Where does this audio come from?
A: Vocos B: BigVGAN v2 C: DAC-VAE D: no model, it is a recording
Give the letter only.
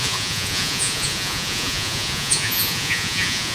A